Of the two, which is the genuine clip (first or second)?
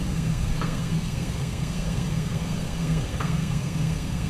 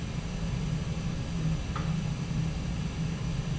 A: second